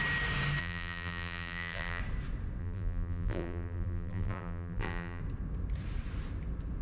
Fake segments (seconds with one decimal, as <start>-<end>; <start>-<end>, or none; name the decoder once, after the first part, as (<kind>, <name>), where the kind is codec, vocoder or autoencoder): 0.6-2.0 (vocoder, BigVGAN v2); 2.6-5.2